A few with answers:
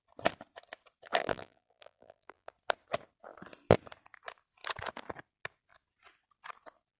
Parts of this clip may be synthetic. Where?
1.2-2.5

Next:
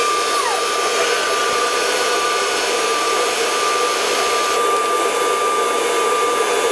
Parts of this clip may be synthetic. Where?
1.4-3.5

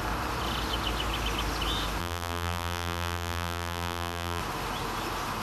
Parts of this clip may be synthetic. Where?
2.0-4.4

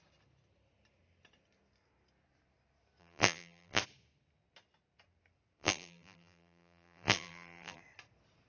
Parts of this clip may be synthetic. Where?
3.0-3.8; 5.6-7.8

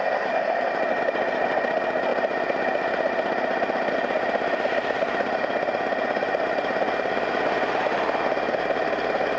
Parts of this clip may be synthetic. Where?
none